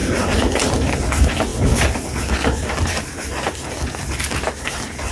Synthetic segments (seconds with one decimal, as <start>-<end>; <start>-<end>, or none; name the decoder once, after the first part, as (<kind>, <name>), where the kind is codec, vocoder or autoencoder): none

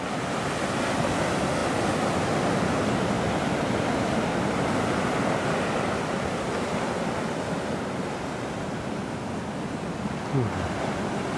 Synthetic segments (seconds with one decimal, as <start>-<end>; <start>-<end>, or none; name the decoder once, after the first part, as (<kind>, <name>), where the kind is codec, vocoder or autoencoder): none

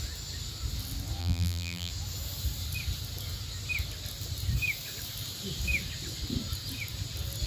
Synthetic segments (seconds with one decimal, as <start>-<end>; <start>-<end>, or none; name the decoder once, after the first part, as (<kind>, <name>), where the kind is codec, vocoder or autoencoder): 1.2-1.9 (vocoder, BigVGAN v2)

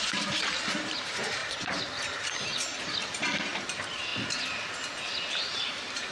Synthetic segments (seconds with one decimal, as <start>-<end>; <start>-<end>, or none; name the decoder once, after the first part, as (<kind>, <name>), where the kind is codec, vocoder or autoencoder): 0.0-1.4 (vocoder, BigVGAN v2); 2.8-4.1; 5.4-6.1